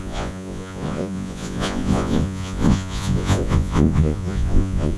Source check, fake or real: fake